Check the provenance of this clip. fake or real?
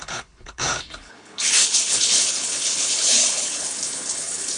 fake